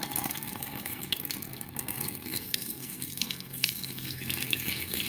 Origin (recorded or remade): remade